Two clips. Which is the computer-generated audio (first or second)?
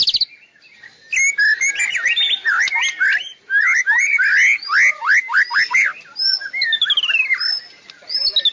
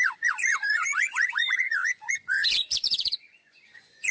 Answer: second